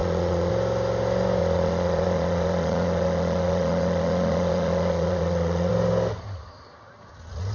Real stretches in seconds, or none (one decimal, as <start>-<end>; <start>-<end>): 0.5-1.4; 5.7-7.5